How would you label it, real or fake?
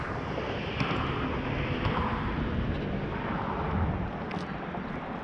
real